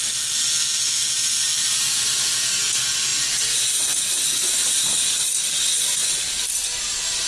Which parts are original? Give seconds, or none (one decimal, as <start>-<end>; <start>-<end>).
0.0-7.3